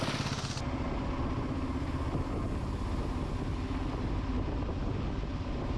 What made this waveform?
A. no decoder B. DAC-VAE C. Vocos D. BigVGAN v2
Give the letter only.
A